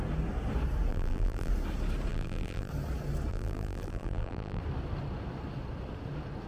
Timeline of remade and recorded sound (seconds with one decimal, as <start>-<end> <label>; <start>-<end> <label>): 0.0-0.9 recorded; 0.9-1.5 remade; 1.5-2.1 recorded; 2.1-2.7 remade; 2.7-3.3 recorded; 3.3-4.6 remade; 4.6-6.5 recorded